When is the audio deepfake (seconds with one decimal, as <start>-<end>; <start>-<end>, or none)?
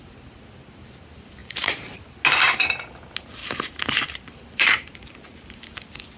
1.4-1.9; 3.4-5.7